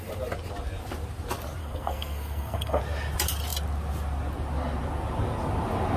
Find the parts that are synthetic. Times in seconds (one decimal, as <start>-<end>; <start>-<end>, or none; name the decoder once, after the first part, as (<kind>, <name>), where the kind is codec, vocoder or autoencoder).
1.6-2.8 (codec, SNAC)